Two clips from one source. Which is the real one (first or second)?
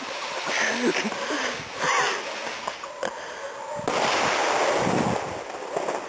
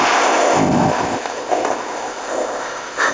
first